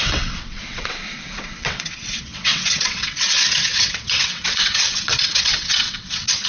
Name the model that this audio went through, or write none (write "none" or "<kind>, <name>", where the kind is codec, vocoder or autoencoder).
vocoder, WaveNeXt